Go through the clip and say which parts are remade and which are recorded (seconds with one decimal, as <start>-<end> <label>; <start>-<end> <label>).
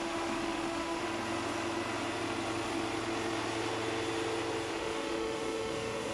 0.0-1.0 remade; 1.0-4.7 recorded; 4.7-6.1 remade